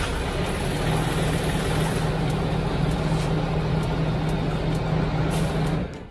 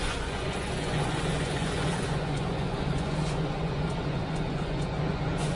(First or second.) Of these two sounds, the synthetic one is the second